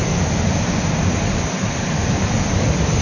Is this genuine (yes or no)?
no